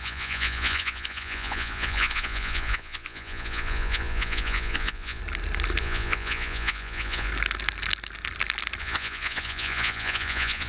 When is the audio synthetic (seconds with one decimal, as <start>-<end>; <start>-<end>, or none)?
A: 0.0-5.2; 5.8-7.3; 8.8-10.7